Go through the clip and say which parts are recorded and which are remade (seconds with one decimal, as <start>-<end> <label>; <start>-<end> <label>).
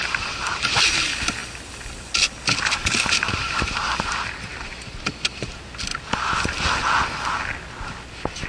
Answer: 0.0-4.5 recorded; 4.5-5.1 remade; 5.1-5.9 recorded; 5.9-6.8 remade; 6.8-8.5 recorded